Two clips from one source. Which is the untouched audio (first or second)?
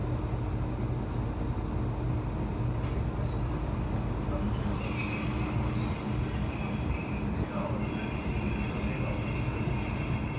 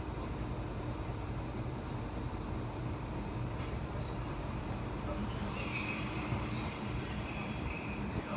first